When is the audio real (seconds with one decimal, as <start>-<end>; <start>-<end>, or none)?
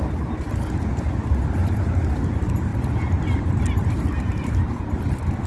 0.0-5.5